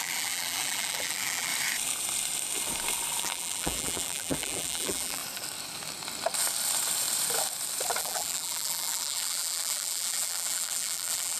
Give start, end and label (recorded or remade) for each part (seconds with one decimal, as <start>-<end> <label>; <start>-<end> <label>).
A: 0.0-1.5 remade; 1.5-3.2 recorded; 3.2-5.2 remade; 5.2-8.0 recorded; 8.0-11.4 remade

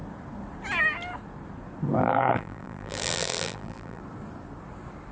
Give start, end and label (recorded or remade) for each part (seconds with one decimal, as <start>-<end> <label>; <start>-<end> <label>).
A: 0.0-2.0 recorded; 2.0-4.0 remade; 4.0-5.1 recorded

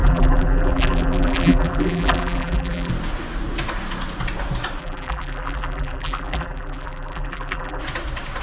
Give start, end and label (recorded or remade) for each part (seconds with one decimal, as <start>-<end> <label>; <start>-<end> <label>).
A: 0.0-2.9 remade; 2.9-4.8 recorded; 4.8-7.8 remade; 7.8-8.4 recorded

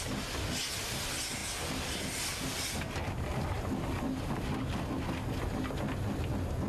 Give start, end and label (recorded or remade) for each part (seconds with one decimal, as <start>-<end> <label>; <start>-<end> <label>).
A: 0.0-6.7 recorded